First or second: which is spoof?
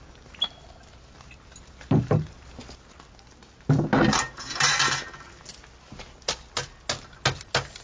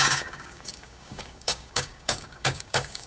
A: second